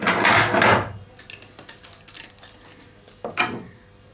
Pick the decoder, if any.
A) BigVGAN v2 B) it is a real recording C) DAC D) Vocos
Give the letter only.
B